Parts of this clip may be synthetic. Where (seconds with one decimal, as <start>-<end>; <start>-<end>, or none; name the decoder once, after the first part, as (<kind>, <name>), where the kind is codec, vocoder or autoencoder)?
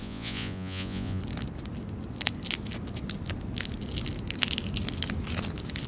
0.0-1.2 (vocoder, Vocos)